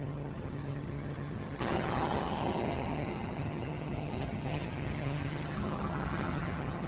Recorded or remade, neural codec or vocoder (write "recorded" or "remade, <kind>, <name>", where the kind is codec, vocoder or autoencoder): remade, vocoder, HiFi-GAN